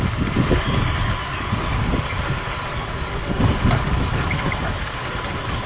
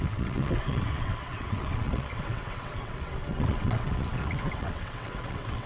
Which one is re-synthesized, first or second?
second